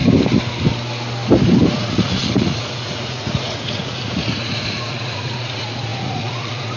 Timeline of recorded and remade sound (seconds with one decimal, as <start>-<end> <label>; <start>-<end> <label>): 0.0-1.7 recorded; 1.7-6.8 remade